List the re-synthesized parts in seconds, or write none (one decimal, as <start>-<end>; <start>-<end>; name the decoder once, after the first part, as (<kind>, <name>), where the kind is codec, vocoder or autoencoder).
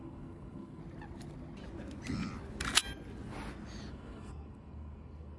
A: 0.0-0.8 (codec, SNAC); 3.9-5.4